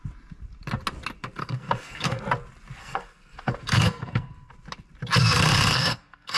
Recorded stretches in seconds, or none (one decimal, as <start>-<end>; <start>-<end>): 0.0-1.4; 2.2-2.8; 4.5-5.2

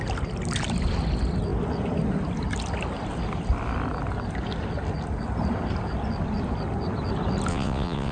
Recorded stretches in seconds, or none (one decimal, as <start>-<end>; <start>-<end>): 0.0-7.5

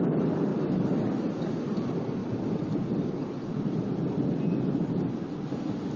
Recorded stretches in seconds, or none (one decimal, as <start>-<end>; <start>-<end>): 0.0-6.0

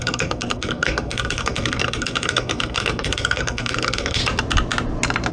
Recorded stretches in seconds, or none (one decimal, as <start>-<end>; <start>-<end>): 4.2-5.3

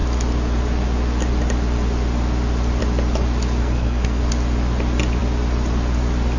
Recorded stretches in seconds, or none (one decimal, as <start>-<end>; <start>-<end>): 0.0-3.6; 4.2-6.4

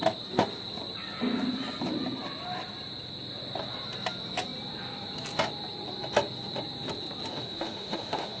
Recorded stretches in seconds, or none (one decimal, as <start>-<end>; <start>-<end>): 0.0-7.3